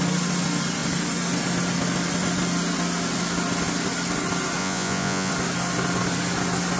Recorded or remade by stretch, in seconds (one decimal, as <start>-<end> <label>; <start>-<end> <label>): 0.0-4.6 recorded; 4.6-5.3 remade; 5.3-6.8 recorded